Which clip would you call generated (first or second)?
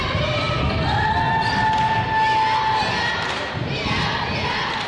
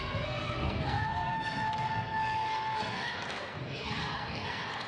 second